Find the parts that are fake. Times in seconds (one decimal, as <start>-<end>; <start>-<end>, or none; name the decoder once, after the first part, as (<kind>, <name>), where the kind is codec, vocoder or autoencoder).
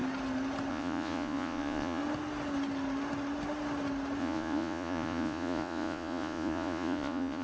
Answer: 0.7-2.0 (vocoder, Vocos); 4.2-7.4